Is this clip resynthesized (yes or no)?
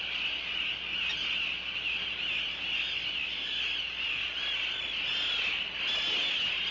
no